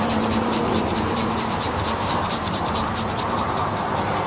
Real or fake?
fake